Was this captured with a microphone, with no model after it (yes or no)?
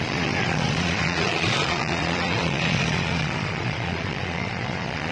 no